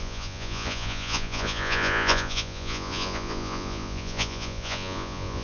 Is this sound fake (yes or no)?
yes